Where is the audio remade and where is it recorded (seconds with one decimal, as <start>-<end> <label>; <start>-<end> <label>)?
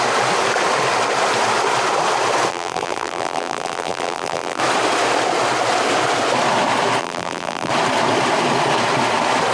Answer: 0.0-2.5 recorded; 2.5-4.6 remade; 4.6-7.0 recorded; 7.0-7.7 remade; 7.7-9.5 recorded